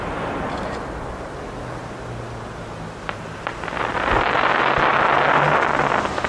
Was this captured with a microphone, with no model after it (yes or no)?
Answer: yes